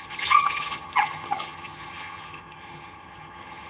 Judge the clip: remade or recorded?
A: remade